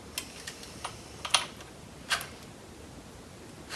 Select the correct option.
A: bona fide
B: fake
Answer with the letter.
A